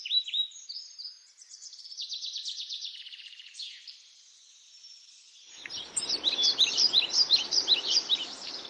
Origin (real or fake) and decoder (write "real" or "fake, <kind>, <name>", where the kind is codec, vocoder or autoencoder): fake, vocoder, BigVGAN v2